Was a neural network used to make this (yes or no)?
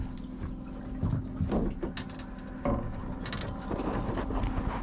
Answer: no